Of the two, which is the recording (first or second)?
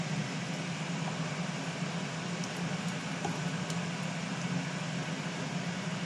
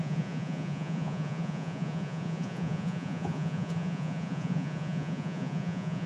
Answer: first